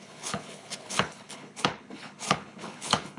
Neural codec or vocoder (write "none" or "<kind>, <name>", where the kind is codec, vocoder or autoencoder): codec, HILCodec